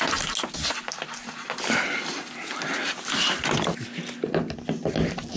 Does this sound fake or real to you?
real